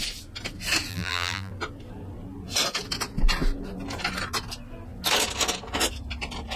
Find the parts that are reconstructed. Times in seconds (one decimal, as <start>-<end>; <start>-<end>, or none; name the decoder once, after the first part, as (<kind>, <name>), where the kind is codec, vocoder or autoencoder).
0.9-1.5 (vocoder, BigVGAN v2)

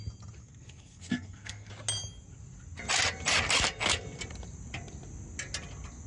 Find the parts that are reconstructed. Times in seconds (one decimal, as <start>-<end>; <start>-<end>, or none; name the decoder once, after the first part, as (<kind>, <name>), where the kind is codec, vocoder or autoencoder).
0.4-1.7 (codec, SNAC)

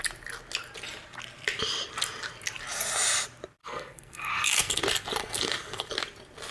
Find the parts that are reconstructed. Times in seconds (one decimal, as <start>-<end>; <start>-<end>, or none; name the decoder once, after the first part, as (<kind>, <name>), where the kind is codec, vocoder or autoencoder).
3.6-4.8 (codec, SNAC); 5.2-5.9

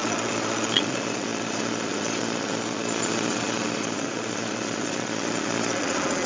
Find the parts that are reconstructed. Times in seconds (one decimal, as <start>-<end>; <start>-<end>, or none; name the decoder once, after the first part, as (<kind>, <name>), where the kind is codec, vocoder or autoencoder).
0.0-6.3 (vocoder, Vocos)

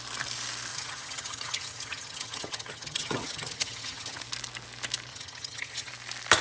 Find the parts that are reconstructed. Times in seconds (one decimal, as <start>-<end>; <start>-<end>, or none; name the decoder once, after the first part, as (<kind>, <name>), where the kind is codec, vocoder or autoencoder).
0.7-4.2 (vocoder, HiFi-GAN); 5.1-5.9